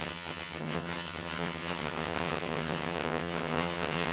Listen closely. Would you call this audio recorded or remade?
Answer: remade